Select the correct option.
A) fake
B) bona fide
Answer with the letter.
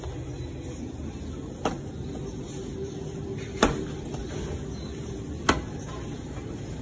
B